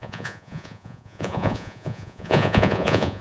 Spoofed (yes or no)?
yes